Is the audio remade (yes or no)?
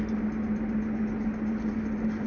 no